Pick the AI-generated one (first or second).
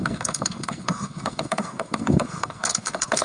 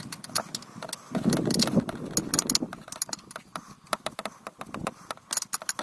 first